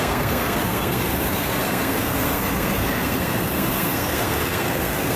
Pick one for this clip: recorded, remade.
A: remade